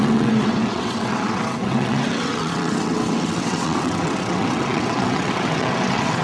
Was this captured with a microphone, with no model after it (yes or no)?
no